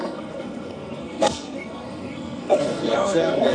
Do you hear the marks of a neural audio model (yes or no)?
yes